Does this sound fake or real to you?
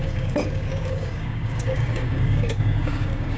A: fake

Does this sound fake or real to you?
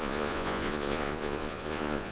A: fake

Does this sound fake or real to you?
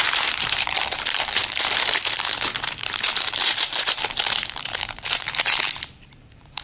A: fake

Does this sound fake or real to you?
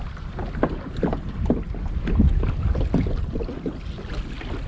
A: real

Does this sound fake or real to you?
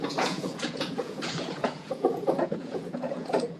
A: fake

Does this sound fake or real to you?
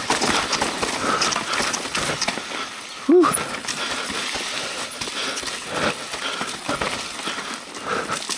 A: real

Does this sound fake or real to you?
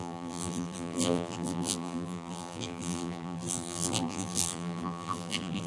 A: fake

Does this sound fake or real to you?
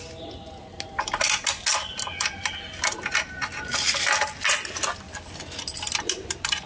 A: real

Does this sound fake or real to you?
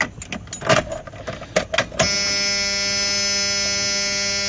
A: real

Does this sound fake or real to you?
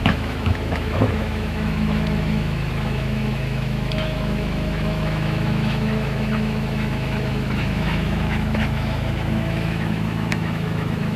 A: fake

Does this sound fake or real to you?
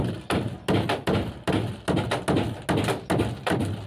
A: real